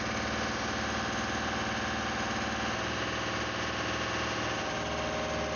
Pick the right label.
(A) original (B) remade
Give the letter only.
A